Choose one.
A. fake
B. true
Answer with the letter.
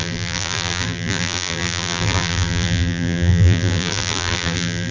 A